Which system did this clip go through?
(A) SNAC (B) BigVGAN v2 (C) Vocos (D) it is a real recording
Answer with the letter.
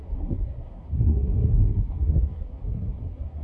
A